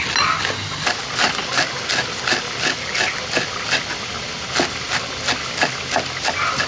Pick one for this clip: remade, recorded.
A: recorded